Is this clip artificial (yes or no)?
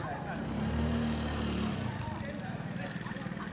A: no